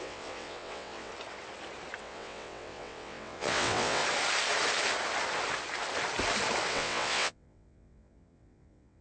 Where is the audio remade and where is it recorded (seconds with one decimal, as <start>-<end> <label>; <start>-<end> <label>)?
0.0-1.1 remade; 1.1-2.0 recorded; 2.0-4.0 remade; 4.0-6.7 recorded; 6.7-9.0 remade